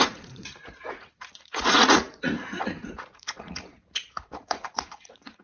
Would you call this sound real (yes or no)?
no